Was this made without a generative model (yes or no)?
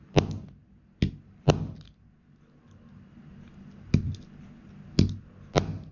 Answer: yes